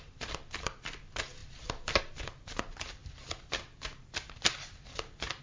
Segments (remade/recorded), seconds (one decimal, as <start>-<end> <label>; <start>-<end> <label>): 0.0-5.4 recorded